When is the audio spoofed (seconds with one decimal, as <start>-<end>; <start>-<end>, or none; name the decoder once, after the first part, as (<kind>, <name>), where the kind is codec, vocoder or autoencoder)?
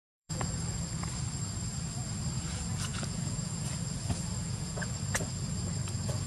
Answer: 0.0-0.5 (vocoder, Vocos); 2.9-3.5; 4.4-4.9